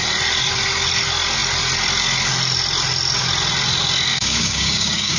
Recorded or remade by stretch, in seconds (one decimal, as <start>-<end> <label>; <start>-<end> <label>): 0.0-4.1 recorded; 4.1-5.2 remade